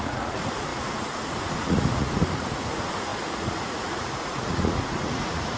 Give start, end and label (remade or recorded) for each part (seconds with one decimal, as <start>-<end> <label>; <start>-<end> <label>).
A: 0.0-5.6 remade